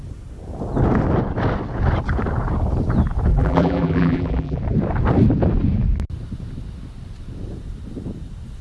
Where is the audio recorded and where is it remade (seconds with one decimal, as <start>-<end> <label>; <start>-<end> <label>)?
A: 0.0-3.3 recorded; 3.3-4.6 remade; 4.6-8.6 recorded